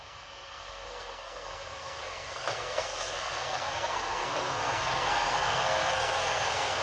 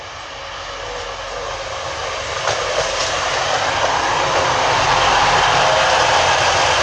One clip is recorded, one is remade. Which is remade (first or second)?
first